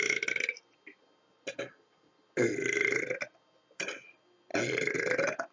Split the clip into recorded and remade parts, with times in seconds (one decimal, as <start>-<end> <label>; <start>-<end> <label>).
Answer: 0.0-5.5 recorded